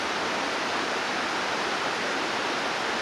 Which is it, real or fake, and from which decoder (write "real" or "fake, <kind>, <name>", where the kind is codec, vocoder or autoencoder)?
real